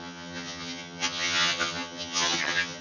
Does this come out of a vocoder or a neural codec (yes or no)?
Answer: yes